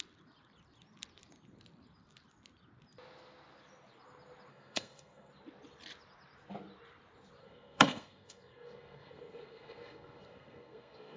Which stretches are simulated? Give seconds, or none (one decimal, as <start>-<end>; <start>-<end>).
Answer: 4.5-5.3; 7.4-11.2